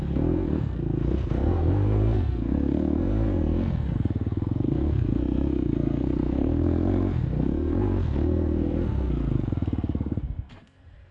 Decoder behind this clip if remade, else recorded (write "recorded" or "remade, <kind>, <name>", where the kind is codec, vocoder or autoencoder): remade, codec, SNAC